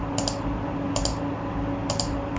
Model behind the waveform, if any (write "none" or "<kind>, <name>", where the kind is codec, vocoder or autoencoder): none